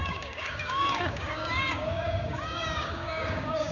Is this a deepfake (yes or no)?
yes